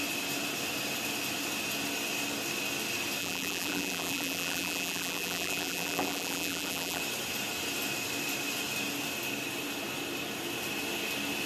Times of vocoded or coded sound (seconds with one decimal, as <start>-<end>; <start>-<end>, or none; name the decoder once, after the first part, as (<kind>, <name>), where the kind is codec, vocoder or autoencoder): 3.2-7.0 (vocoder, BigVGAN v2)